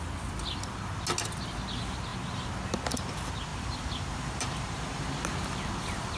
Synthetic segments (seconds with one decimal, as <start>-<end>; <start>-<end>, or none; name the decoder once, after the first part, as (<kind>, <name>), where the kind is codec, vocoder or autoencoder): 3.5-5.0 (vocoder, BigVGAN v2)